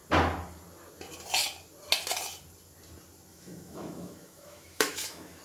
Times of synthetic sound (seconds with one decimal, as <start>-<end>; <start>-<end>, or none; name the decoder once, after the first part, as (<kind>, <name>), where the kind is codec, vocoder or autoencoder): 3.3-5.4 (autoencoder, DAC-VAE)